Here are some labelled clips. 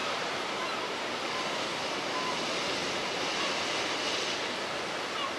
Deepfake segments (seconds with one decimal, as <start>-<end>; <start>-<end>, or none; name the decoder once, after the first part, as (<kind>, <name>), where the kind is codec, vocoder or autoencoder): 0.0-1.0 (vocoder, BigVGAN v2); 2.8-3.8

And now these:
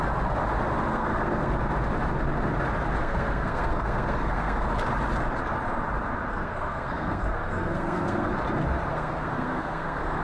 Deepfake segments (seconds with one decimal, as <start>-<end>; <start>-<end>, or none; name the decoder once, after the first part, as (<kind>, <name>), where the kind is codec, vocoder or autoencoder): 0.9-1.5 (codec, SNAC); 3.0-4.7; 6.3-8.3; 8.9-10.2

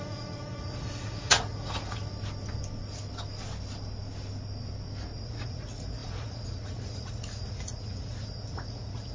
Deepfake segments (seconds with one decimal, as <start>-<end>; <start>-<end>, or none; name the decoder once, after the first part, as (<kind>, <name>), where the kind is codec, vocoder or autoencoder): 0.0-2.0 (vocoder, Vocos); 5.2-9.1

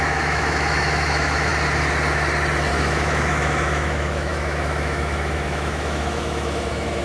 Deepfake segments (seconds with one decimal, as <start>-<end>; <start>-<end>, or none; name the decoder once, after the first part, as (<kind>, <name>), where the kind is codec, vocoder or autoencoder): 0.0-1.5 (autoencoder, DAC-VAE); 2.7-7.0

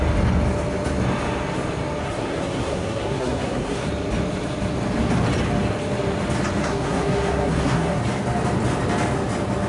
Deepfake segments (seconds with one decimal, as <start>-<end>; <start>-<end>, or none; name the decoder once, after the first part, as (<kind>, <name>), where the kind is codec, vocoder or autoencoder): 2.0-3.9 (codec, SNAC); 6.6-8.0